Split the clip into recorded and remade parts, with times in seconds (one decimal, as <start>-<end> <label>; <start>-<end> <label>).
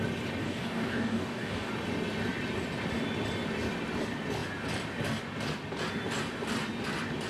0.0-0.4 recorded; 0.4-1.7 remade; 1.7-7.3 recorded